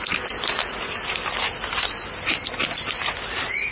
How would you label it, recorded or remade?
recorded